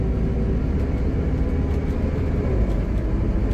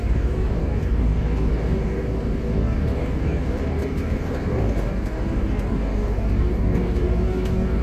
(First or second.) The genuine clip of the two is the first